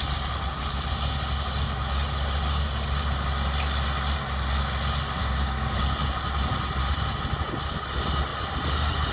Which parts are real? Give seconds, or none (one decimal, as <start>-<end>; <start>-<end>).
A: 0.0-5.2; 5.8-9.1